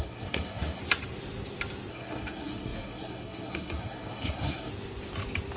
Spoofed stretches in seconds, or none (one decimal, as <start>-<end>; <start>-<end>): 0.0-0.8; 1.9-4.7